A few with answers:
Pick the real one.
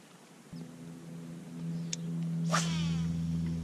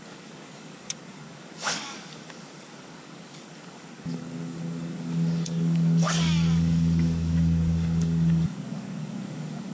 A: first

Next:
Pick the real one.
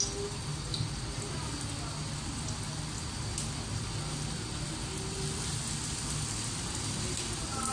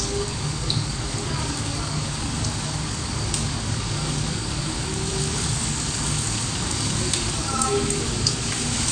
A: first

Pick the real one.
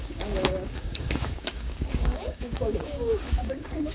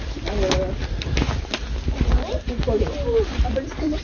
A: second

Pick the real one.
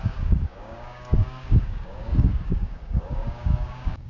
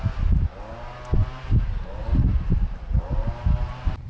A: second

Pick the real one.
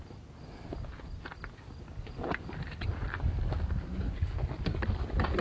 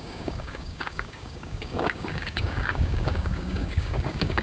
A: first